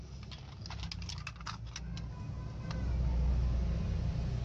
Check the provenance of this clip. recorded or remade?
recorded